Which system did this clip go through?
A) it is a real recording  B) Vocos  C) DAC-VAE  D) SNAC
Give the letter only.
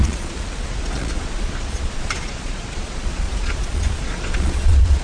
B